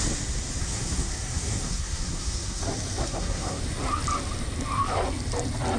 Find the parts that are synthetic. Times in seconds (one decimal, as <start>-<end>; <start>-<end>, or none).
0.6-2.6; 3.0-3.6